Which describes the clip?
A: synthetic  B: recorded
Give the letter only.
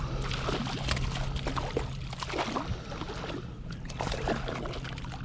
B